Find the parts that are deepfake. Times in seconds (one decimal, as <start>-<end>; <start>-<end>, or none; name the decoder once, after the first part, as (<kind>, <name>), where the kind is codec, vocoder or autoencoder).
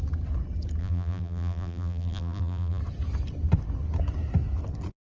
0.8-2.8 (vocoder, BigVGAN v2)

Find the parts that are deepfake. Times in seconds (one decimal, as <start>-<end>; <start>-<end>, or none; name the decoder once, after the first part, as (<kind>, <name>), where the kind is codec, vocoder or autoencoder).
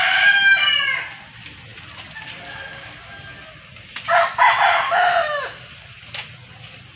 none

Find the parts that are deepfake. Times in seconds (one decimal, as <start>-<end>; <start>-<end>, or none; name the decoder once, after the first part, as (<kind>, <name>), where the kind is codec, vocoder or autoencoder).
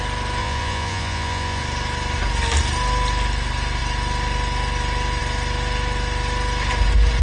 0.4-1.6 (vocoder, Vocos)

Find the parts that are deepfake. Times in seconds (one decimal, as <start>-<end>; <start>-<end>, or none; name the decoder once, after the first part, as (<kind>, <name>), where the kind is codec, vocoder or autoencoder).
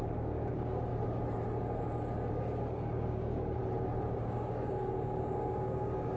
0.0-0.9 (codec, DAC); 2.3-3.6; 4.2-6.2